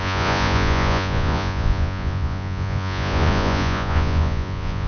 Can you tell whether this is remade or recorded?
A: remade